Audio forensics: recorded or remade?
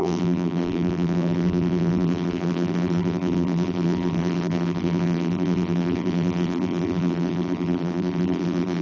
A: remade